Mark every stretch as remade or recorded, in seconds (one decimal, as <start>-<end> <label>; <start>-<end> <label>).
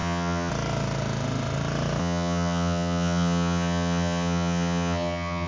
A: 0.0-0.5 remade; 0.5-2.0 recorded; 2.0-5.5 remade